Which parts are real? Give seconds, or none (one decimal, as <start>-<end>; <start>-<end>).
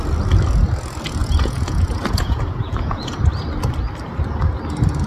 0.0-1.2; 3.2-5.1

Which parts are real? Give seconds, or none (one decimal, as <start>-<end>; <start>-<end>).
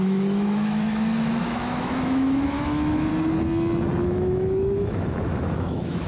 3.1-4.0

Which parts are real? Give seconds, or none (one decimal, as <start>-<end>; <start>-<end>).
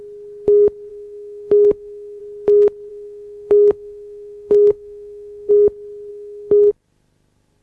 0.0-0.9; 2.2-2.9; 5.5-6.1; 6.7-7.6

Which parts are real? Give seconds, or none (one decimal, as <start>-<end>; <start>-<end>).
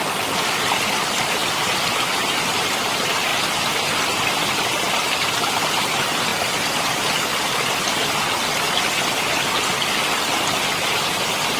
6.3-9.9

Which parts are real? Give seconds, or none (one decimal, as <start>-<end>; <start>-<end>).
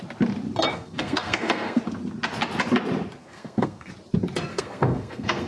0.0-0.7; 1.8-3.2; 3.9-4.5